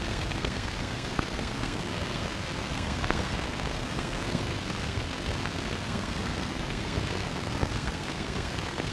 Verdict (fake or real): fake